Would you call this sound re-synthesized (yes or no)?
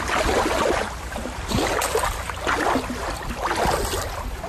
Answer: no